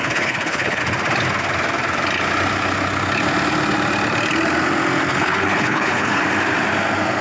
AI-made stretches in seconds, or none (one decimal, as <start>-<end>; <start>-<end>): 0.0-0.8; 5.1-6.2